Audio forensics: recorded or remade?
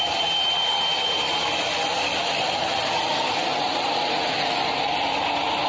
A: recorded